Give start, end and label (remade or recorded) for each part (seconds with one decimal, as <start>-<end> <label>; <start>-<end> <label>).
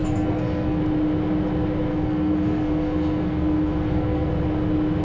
0.0-0.8 remade; 0.8-1.9 recorded; 1.9-4.3 remade; 4.3-5.0 recorded